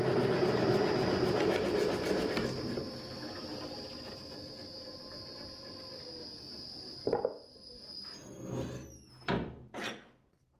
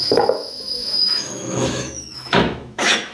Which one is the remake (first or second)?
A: second